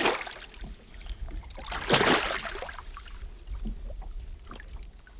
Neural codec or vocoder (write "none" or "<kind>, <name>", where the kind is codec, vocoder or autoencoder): none